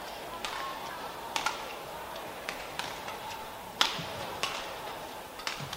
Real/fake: fake